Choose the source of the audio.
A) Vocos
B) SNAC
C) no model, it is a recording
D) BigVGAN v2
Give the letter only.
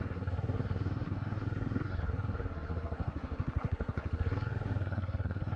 B